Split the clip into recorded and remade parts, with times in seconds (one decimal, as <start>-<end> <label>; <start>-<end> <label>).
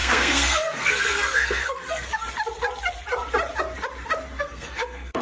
0.0-2.1 remade; 2.1-4.4 recorded; 4.4-5.2 remade